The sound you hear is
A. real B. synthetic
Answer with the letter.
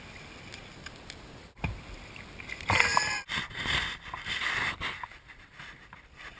A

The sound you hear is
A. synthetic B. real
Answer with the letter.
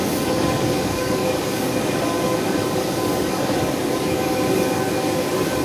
A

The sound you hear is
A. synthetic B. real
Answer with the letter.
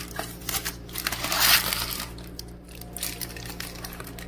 B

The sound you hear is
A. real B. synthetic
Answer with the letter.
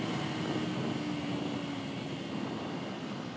A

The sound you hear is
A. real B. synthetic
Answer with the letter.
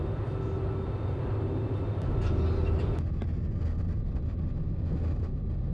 A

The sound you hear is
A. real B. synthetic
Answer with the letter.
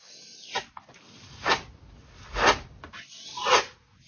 A